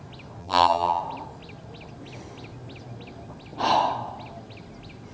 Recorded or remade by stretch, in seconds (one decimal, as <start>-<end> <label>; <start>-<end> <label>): 0.0-0.4 recorded; 0.4-1.0 remade; 1.0-5.1 recorded